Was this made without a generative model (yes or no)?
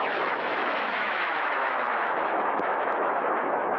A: no